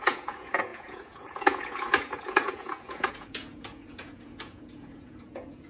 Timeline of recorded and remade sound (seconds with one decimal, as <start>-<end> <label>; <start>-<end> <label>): 0.0-5.7 remade